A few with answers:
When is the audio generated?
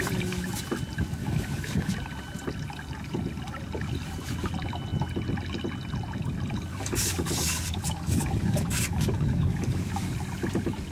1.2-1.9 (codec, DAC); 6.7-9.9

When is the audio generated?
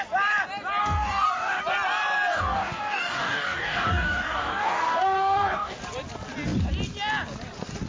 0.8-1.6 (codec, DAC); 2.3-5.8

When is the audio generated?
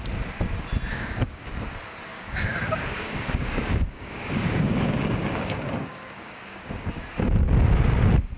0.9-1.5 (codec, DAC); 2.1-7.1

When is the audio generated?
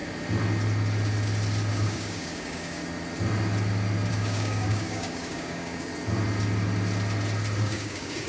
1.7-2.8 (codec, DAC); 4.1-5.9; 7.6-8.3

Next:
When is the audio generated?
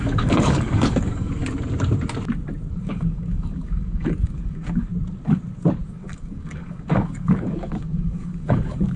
0.0-1.4 (codec, DAC); 2.7-4.9; 5.9-9.0